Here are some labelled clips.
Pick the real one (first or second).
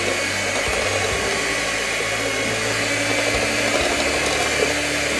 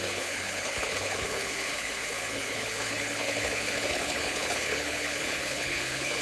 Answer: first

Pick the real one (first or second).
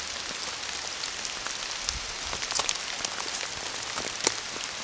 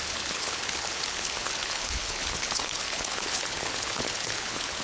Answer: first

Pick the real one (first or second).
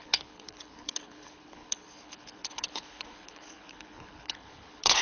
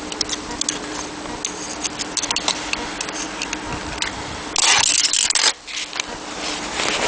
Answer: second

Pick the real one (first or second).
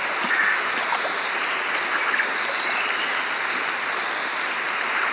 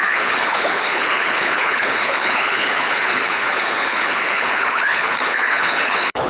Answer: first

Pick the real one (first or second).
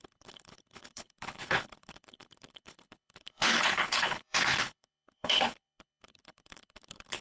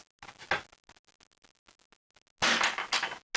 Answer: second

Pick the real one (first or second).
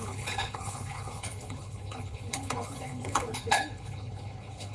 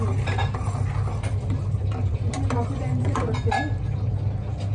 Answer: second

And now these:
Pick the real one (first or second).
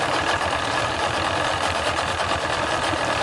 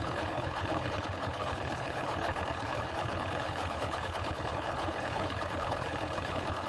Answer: first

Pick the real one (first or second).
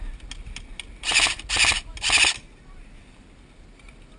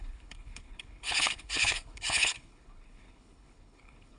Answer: first